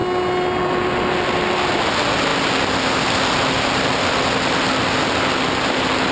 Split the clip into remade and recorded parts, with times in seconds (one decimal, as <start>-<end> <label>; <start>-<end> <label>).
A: 0.0-6.1 recorded